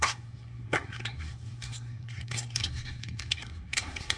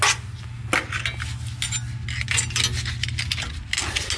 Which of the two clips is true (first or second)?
second